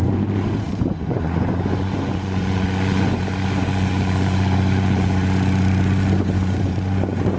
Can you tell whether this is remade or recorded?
remade